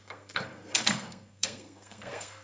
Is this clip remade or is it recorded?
remade